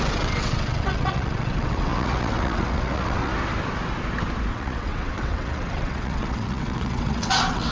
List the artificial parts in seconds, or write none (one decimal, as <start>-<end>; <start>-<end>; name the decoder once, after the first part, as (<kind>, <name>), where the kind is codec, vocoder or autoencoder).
0.0-3.3 (vocoder, WaveNeXt); 4.5-7.7